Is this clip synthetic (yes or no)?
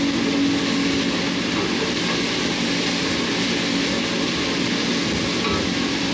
no